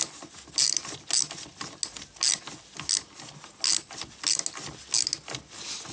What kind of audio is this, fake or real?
real